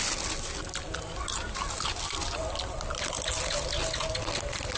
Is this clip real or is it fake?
real